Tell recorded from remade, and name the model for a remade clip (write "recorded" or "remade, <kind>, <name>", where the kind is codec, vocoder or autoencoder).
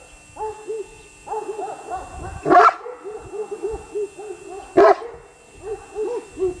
recorded